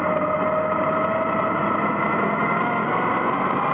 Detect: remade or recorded recorded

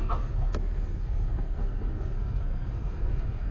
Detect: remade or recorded remade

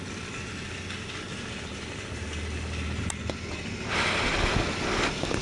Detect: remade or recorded recorded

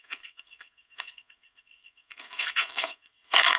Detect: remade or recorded remade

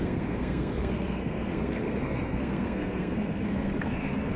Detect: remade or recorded remade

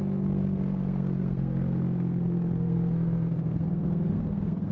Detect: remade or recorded remade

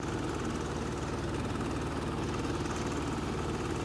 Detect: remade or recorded recorded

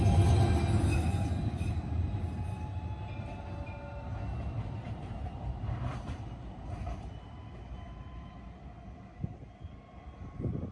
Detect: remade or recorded recorded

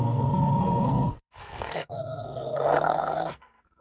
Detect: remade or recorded remade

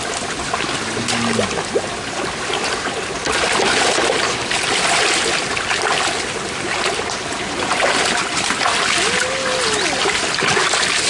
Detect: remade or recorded recorded